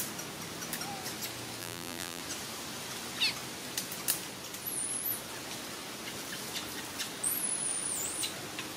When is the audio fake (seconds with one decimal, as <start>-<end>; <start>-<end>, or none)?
1.6-2.2